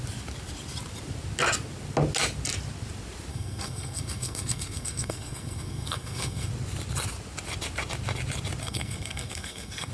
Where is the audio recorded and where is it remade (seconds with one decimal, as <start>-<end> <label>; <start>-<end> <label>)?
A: 0.0-3.3 recorded; 3.3-6.5 remade; 6.5-8.6 recorded; 8.6-9.9 remade